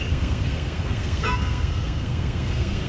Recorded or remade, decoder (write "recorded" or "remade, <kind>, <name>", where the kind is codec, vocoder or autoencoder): remade, codec, SNAC